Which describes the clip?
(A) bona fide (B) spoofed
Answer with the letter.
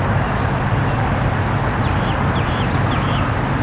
A